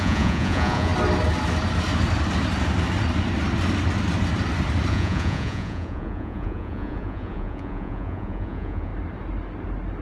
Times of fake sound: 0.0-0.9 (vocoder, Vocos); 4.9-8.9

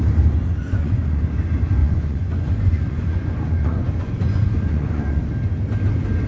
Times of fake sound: 0.6-1.3 (vocoder, Vocos); 1.8-5.2

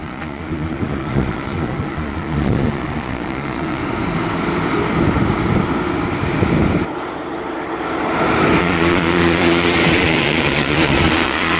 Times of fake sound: 0.0-3.8 (vocoder, Vocos); 8.6-11.6

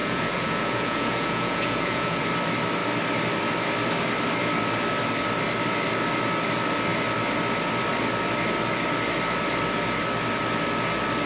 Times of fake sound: 0.0-2.2 (vocoder, Vocos)

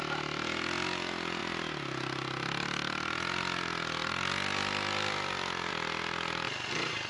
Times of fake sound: none